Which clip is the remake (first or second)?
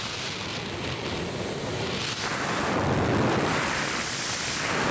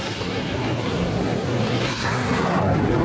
second